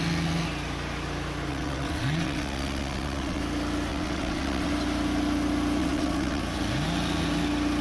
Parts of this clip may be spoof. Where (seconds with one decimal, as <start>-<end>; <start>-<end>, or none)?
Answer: 1.5-3.4; 3.9-4.7; 5.8-6.4